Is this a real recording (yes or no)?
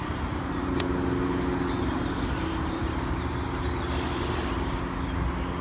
yes